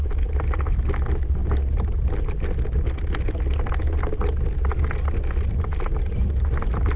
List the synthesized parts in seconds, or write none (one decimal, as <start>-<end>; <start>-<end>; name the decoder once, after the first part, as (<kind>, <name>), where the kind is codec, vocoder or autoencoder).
none